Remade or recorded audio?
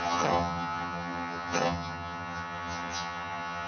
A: remade